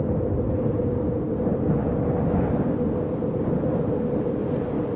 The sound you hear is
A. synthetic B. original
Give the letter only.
B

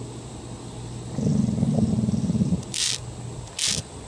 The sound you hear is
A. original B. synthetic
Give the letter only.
A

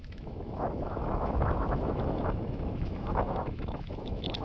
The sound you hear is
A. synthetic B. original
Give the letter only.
A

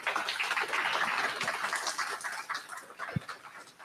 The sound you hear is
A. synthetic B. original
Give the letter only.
B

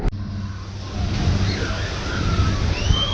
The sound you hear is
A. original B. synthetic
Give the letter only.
A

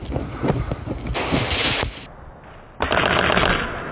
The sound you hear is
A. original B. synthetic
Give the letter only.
A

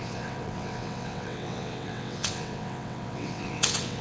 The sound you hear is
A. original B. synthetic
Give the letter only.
B